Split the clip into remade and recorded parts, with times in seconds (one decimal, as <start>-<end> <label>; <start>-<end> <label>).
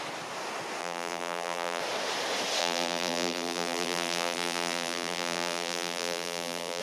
0.0-0.8 recorded; 0.8-1.8 remade; 1.8-2.6 recorded; 2.6-6.8 remade